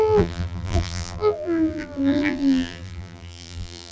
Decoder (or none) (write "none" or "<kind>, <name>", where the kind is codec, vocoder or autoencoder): vocoder, BigVGAN v2